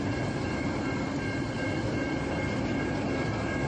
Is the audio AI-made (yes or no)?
no